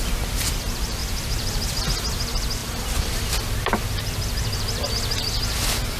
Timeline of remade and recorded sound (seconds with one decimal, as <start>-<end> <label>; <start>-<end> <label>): 0.0-1.0 recorded; 1.0-1.8 remade; 1.8-6.0 recorded